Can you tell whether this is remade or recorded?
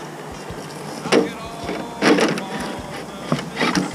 recorded